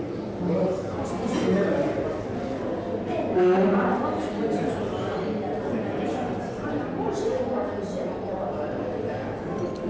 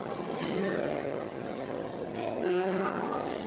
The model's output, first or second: second